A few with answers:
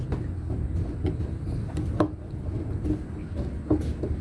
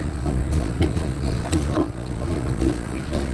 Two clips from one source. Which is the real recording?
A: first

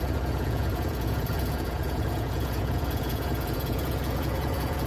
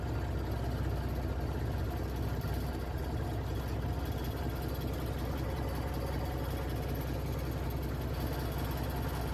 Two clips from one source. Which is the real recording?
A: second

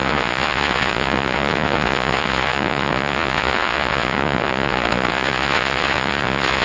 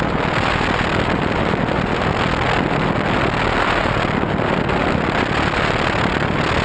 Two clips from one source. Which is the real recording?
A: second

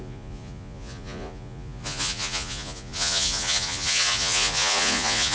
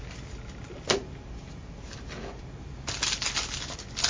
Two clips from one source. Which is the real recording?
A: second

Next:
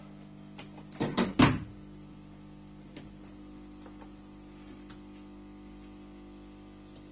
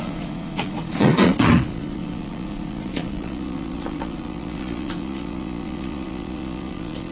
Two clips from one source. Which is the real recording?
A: first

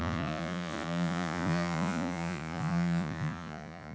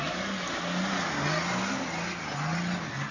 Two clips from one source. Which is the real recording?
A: second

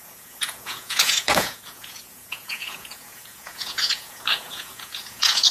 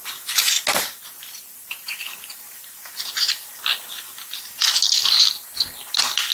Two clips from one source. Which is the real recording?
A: second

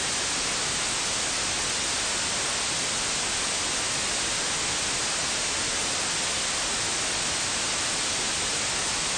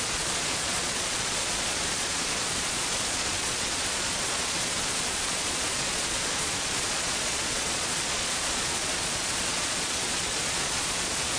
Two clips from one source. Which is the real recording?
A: first